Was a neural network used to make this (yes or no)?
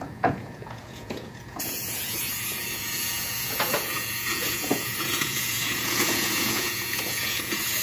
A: yes